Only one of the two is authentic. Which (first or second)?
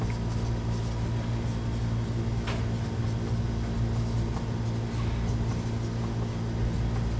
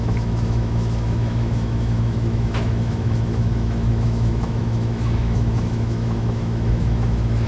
first